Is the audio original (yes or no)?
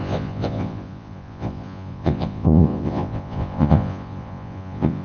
no